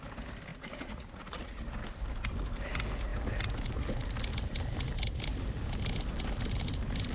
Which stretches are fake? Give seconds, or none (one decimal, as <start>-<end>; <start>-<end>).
0.5-1.6